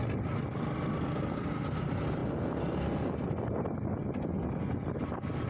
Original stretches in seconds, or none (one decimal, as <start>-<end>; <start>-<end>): 0.0-5.5